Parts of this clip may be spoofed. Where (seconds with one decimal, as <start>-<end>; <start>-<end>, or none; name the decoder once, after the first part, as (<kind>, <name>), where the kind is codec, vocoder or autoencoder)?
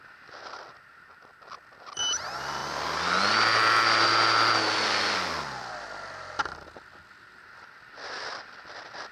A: none